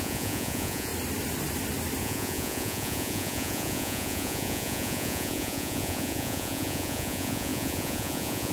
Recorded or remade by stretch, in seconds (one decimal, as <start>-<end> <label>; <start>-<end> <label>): 0.0-0.9 remade; 0.9-2.0 recorded; 2.0-8.5 remade